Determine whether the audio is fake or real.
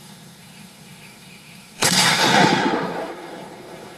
fake